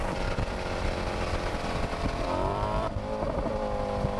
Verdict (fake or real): fake